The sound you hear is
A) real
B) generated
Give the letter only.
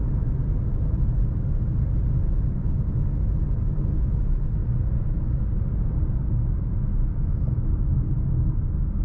A